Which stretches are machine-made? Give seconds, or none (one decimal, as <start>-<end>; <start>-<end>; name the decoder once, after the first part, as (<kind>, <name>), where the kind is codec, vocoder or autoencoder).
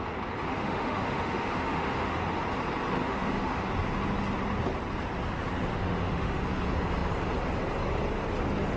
0.5-2.2 (autoencoder, DAC-VAE); 3.0-3.7; 5.7-6.4